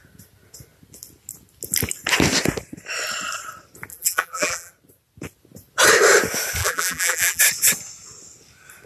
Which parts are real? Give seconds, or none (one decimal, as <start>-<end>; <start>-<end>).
0.0-3.9; 4.7-6.6; 7.4-8.9